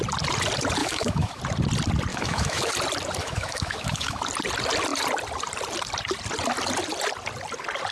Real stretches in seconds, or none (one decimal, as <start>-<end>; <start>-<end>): 0.0-0.8; 1.4-2.1; 2.7-3.2; 4.2-7.9